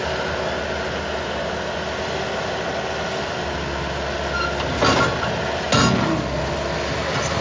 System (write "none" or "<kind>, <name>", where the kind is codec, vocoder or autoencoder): none